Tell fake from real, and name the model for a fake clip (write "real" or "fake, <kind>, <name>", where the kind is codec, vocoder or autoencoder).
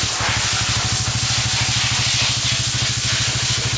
real